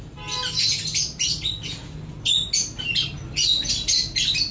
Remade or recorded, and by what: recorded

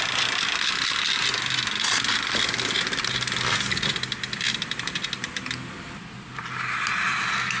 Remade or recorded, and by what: recorded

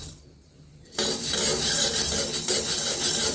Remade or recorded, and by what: recorded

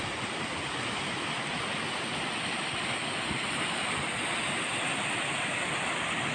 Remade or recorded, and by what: recorded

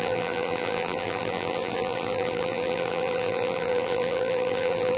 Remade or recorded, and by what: remade, vocoder, BigVGAN v2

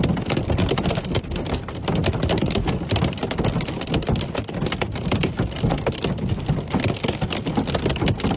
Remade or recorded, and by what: recorded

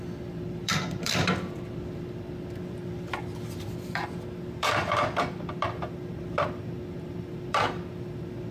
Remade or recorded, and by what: remade, vocoder, BigVGAN v2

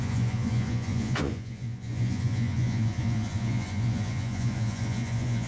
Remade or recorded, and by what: remade, vocoder, Vocos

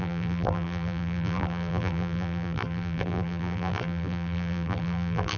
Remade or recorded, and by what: remade, vocoder, BigVGAN v2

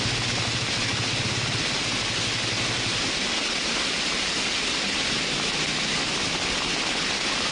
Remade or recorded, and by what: recorded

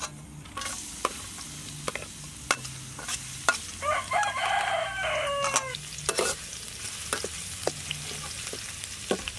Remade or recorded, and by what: recorded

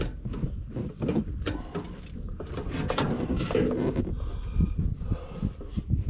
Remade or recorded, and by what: recorded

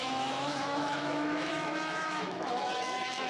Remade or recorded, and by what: remade, autoencoder, DAC-VAE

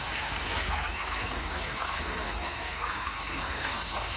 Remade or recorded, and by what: remade, codec, SNAC